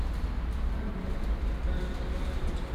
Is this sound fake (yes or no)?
no